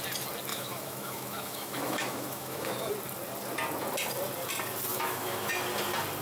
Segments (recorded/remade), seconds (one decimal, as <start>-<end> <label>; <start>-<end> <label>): 0.0-0.5 recorded; 0.5-2.9 remade; 2.9-4.9 recorded; 4.9-5.5 remade; 5.5-6.2 recorded